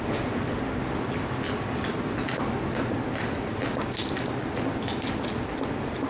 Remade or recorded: recorded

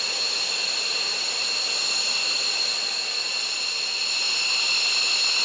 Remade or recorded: recorded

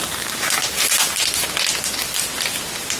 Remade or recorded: recorded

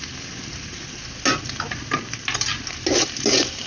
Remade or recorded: recorded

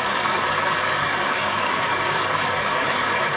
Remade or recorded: remade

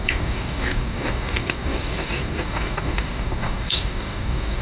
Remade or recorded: remade